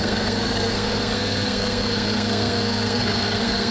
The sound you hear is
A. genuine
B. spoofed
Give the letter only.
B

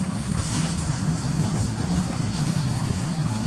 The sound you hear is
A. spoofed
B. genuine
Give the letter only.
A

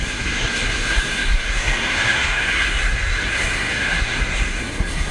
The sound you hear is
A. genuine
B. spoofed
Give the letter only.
B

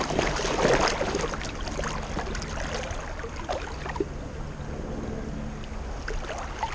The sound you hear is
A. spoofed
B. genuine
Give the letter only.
B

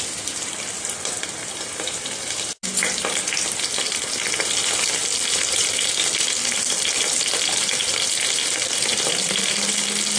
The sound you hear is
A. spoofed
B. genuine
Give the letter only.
B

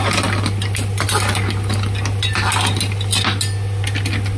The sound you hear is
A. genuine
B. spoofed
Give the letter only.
A